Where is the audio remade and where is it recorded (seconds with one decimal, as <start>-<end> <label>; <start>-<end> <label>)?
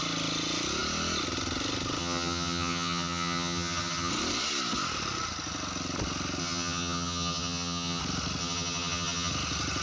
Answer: 0.0-2.0 recorded; 2.0-4.1 remade; 4.1-6.4 recorded; 6.4-8.0 remade; 8.0-8.4 recorded; 8.4-9.3 remade; 9.3-9.8 recorded